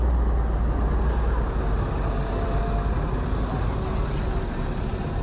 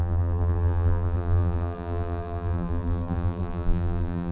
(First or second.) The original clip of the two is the first